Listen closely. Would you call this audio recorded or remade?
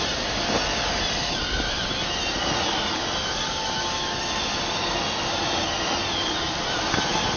recorded